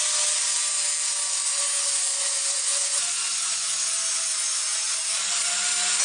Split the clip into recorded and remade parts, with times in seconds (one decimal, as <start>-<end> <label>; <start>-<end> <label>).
0.0-2.1 recorded; 2.1-3.7 remade; 3.7-6.0 recorded